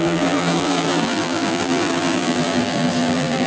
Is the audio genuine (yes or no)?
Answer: no